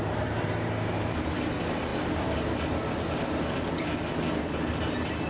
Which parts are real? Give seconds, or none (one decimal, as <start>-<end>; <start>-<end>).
1.9-4.4